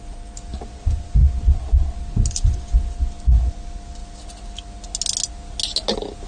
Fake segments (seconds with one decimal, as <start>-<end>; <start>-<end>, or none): none